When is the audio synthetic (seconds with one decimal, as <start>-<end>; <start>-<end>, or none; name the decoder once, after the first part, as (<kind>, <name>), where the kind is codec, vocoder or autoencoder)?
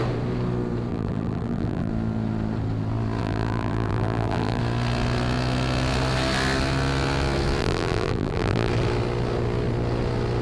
0.9-1.9 (vocoder, BigVGAN v2); 3.2-4.6; 7.6-8.7